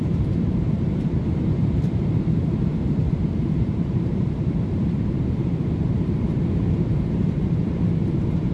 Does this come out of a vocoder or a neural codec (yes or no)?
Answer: yes